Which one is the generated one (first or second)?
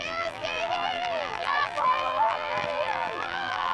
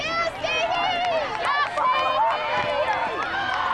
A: first